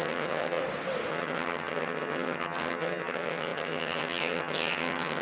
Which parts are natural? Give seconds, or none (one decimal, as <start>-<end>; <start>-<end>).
0.6-1.1